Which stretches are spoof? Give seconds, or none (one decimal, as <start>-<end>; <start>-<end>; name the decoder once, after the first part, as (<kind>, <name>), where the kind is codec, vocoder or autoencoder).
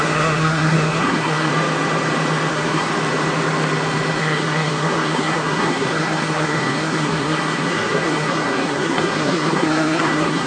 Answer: 0.0-1.5 (codec, SNAC); 2.5-2.9; 4.2-10.5